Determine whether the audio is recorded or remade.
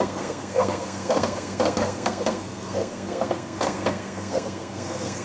remade